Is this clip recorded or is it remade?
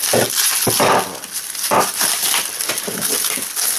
recorded